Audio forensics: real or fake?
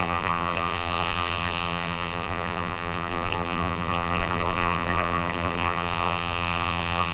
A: fake